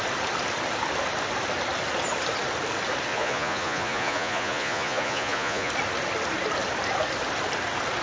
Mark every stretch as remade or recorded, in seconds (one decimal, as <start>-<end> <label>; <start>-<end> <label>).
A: 0.0-3.1 recorded; 3.1-5.7 remade; 5.7-8.0 recorded